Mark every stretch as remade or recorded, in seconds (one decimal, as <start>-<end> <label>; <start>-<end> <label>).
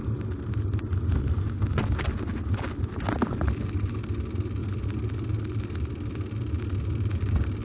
0.0-7.6 recorded